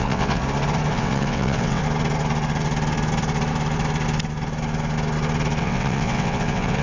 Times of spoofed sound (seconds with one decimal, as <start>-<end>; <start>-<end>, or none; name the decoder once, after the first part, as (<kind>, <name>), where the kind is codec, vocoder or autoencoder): 0.0-0.4 (vocoder, WaveNeXt); 0.9-1.8; 5.6-6.8